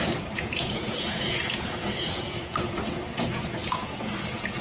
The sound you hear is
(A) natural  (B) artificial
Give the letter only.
B